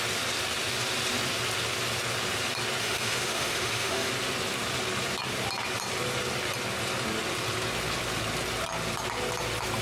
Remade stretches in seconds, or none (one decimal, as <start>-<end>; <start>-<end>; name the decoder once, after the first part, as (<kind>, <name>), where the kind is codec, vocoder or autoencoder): 2.8-4.1 (autoencoder, DAC-VAE)